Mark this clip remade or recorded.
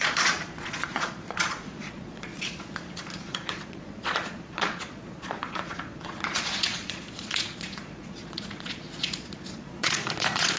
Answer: remade